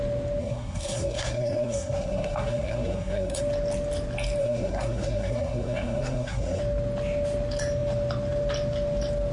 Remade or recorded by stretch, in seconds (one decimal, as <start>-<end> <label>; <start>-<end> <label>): 0.0-0.4 recorded; 0.4-3.4 remade; 3.4-4.4 recorded; 4.4-6.6 remade; 6.6-9.3 recorded